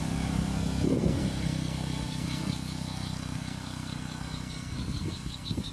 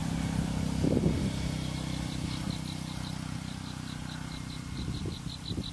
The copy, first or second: first